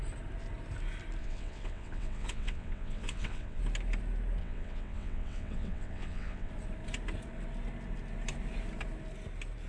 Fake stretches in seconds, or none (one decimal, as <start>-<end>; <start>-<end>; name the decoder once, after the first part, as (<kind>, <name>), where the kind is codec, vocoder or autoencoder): 1.2-3.6 (vocoder, WaveNeXt); 4.4-6.5